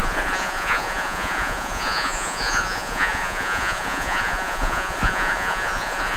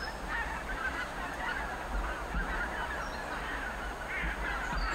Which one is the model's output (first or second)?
first